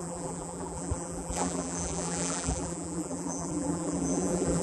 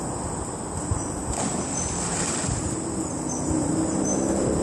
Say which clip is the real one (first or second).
second